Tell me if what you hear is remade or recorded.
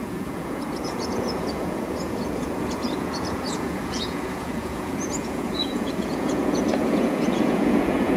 remade